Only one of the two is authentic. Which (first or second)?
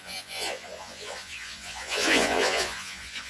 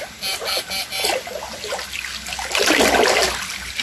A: second